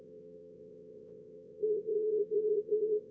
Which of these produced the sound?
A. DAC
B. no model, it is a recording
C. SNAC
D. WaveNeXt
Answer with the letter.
D